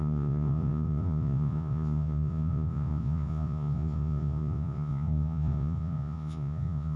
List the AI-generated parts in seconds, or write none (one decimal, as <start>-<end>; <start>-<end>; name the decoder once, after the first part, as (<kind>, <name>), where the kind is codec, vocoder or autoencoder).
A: 0.0-7.0 (vocoder, Vocos)